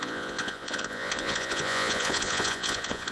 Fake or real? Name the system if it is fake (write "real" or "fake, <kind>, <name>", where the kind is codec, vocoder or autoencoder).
fake, vocoder, Vocos